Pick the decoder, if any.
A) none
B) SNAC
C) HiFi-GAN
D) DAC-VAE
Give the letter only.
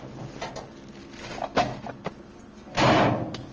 A